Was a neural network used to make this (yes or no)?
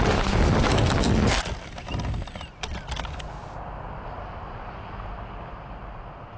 no